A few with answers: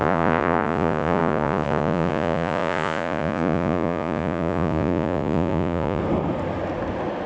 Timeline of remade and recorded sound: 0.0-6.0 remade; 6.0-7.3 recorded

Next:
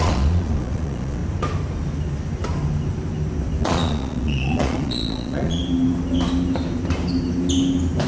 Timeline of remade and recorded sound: 0.0-1.2 remade; 1.2-3.6 recorded; 3.6-5.6 remade; 5.6-8.1 recorded

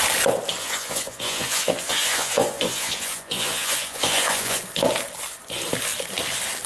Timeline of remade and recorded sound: 0.0-0.6 recorded; 0.6-4.6 remade; 4.6-6.7 recorded

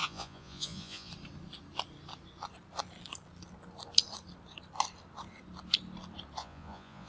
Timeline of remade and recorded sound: 0.0-1.1 remade; 1.1-6.4 recorded; 6.4-7.1 remade

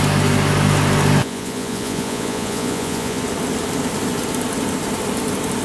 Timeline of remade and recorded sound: 0.0-1.2 recorded; 1.2-3.2 remade; 3.2-5.6 recorded

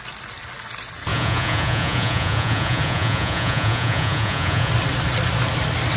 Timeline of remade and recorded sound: 0.0-1.1 recorded; 1.1-4.7 remade; 4.7-6.0 recorded

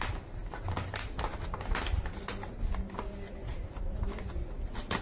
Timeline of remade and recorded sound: 0.0-5.0 recorded

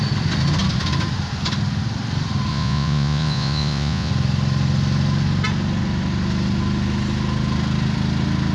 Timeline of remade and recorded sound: 0.0-2.5 recorded; 2.5-4.1 remade; 4.1-8.5 recorded